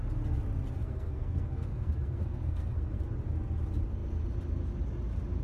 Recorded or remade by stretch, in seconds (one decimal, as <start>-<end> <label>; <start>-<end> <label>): 0.0-0.8 recorded; 0.8-3.1 remade; 3.1-5.4 recorded